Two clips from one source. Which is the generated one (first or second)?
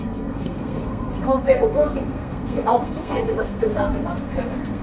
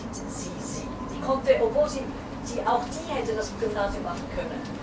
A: first